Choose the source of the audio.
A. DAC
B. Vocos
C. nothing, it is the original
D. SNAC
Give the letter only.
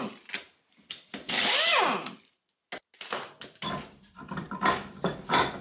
C